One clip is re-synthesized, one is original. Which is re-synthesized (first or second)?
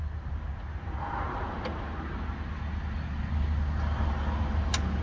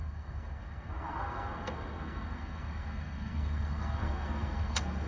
second